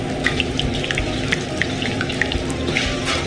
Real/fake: real